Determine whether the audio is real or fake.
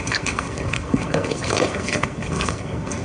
fake